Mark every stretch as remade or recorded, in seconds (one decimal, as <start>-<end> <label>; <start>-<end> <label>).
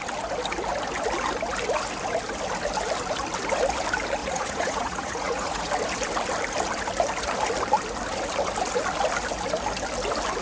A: 0.0-4.2 recorded; 4.2-5.7 remade; 5.7-10.4 recorded